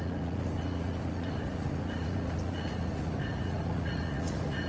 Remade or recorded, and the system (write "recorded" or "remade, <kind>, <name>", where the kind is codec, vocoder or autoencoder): remade, vocoder, Vocos